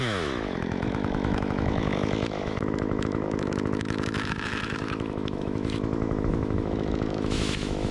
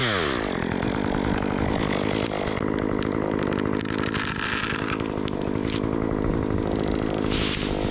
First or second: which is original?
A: second